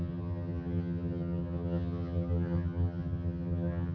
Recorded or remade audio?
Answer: remade